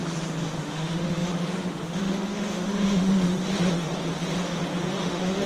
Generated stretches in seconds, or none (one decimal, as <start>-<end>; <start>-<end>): 0.5-3.3; 5.0-5.5